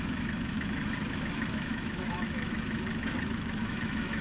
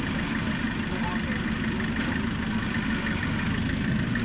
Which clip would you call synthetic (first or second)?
first